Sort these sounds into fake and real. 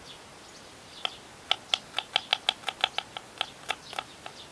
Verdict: real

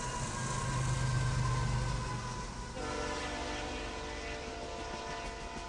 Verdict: real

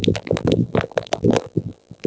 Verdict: fake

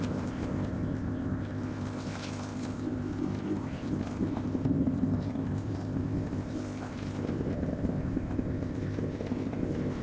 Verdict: fake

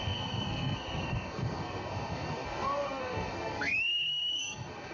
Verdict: fake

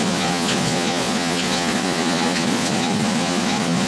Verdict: fake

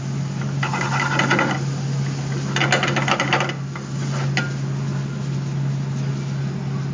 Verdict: real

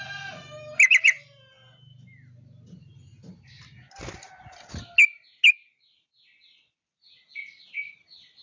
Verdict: real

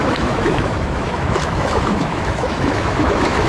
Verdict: fake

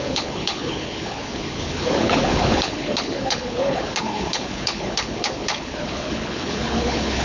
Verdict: fake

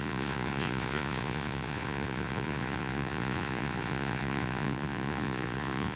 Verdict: fake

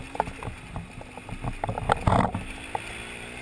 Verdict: real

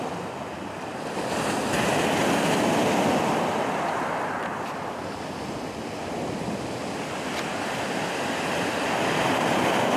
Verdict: fake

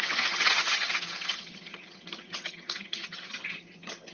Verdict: fake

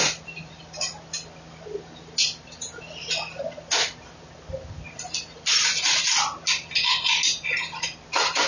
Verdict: real